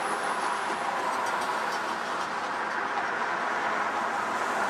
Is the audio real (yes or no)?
yes